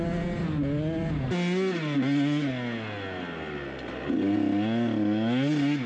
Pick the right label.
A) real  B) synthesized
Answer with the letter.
A